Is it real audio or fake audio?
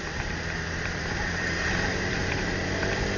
fake